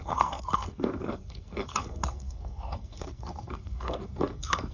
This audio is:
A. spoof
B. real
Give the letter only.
A